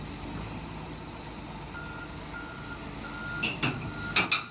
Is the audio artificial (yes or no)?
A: no